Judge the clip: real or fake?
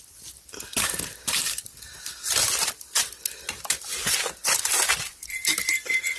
real